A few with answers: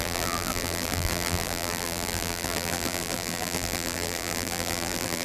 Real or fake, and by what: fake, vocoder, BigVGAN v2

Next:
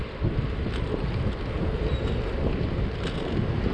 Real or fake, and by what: real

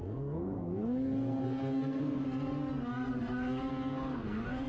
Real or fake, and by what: fake, codec, SNAC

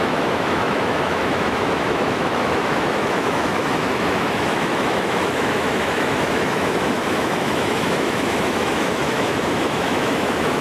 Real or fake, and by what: fake, autoencoder, DAC-VAE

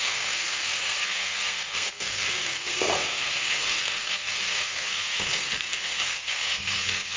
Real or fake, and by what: fake, codec, SNAC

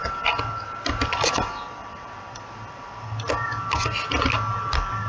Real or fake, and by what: real